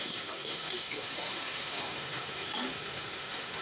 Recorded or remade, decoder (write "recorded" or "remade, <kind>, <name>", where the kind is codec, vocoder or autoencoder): remade, autoencoder, DAC-VAE